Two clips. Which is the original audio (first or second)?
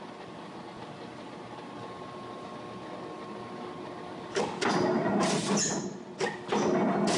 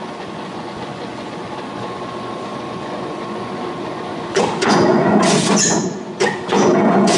first